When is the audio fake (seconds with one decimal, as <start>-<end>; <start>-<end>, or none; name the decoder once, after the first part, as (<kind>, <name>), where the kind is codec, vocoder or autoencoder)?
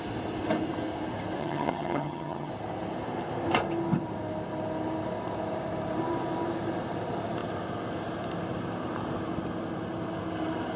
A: 1.4-2.5 (vocoder, HiFi-GAN)